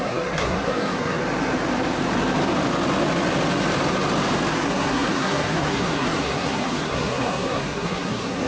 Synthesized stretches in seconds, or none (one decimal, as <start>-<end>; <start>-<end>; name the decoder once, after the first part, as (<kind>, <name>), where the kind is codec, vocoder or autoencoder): 0.0-1.2 (codec, SNAC); 4.5-8.5